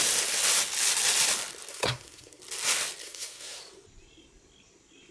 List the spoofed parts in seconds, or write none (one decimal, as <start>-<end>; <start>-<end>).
1.7-2.4; 3.0-3.6